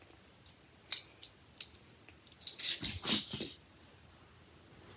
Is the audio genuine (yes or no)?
yes